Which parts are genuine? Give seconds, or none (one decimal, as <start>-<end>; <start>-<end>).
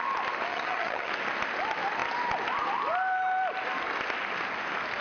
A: 0.0-0.5; 1.1-5.0